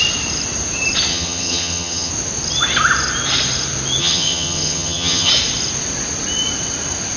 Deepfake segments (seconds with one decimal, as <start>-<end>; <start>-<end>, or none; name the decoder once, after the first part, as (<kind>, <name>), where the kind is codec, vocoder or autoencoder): 1.1-2.1 (vocoder, HiFi-GAN); 4.0-5.3